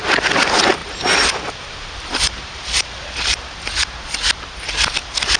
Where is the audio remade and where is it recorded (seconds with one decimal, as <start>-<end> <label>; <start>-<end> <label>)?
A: 0.0-0.8 recorded; 0.8-4.0 remade; 4.0-5.4 recorded